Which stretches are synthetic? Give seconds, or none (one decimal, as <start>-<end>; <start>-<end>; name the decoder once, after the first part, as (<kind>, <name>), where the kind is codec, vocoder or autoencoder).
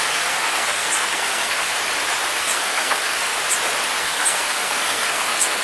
0.0-1.7 (codec, SNAC); 2.4-3.3; 4.0-5.6